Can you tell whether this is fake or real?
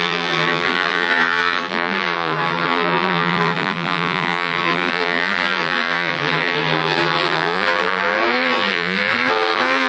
fake